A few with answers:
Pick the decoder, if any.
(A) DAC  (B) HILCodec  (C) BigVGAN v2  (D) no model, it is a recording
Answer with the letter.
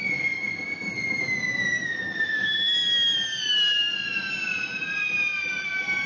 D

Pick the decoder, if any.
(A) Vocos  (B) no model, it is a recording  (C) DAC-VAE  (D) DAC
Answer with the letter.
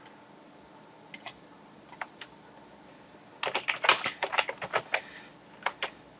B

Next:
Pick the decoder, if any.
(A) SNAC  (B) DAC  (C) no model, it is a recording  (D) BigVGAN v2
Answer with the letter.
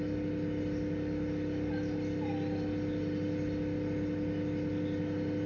C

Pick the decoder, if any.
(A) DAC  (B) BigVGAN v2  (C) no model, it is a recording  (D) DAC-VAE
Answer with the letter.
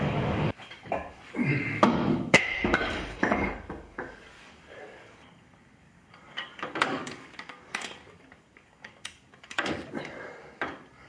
A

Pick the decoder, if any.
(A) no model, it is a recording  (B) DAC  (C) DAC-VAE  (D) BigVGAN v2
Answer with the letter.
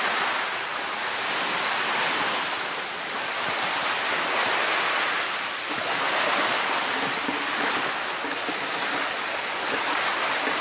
A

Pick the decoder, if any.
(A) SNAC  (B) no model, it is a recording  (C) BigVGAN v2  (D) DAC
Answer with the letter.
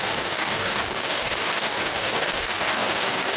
D